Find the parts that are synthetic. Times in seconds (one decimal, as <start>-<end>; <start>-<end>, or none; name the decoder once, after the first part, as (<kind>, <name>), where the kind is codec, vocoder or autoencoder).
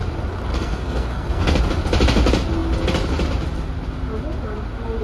0.5-1.6 (codec, SNAC)